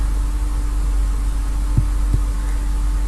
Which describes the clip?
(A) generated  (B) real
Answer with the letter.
B